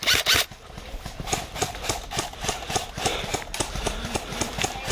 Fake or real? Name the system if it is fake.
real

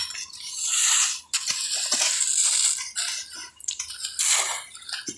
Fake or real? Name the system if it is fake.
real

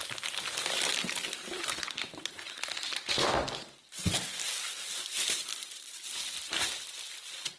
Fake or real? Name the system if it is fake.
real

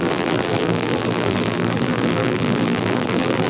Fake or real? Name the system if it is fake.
fake, vocoder, BigVGAN v2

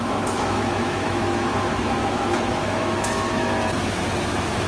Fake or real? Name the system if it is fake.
fake, autoencoder, DAC-VAE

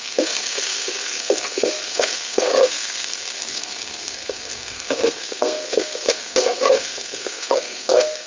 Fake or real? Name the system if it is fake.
fake, codec, SNAC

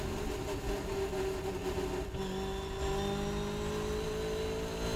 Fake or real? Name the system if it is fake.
real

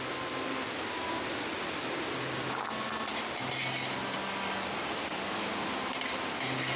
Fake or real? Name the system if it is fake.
real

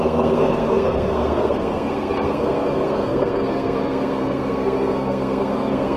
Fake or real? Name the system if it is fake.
fake, codec, SNAC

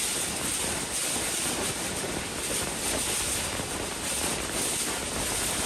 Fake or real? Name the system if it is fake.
real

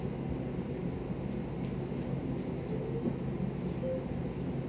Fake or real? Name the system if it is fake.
real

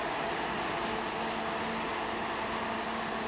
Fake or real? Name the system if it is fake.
real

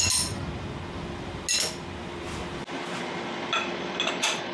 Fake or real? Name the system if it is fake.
real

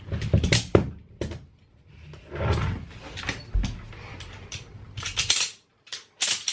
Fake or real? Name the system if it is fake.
real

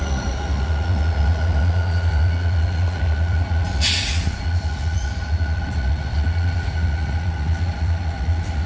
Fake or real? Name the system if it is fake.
fake, vocoder, Vocos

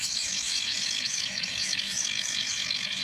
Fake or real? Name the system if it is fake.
fake, autoencoder, DAC-VAE